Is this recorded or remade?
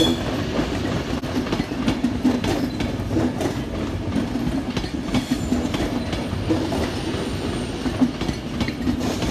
recorded